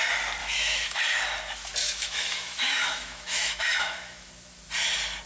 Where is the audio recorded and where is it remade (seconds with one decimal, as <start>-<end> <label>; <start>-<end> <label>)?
0.0-0.4 recorded; 0.4-1.0 remade; 1.0-1.8 recorded; 1.8-4.3 remade; 4.3-5.3 recorded